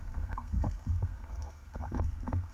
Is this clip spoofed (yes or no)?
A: yes